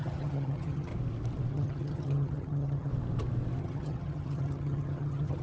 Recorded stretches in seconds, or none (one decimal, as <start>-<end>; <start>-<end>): 0.9-1.5; 2.9-3.6